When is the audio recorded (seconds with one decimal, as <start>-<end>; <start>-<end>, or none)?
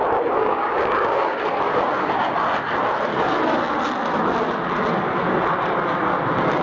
0.0-0.4; 1.4-6.6